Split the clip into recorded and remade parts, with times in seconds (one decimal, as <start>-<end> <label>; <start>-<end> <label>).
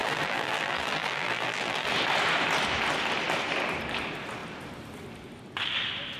0.0-1.9 remade; 1.9-6.2 recorded